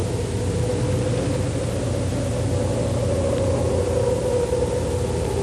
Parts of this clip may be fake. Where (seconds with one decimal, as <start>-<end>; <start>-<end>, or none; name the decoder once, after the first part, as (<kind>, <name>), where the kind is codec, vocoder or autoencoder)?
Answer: none